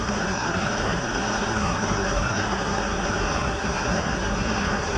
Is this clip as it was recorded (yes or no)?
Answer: no